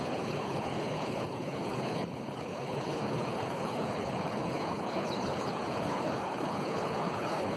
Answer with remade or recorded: remade